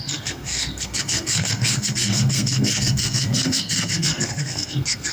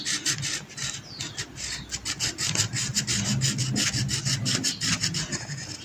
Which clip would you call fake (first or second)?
first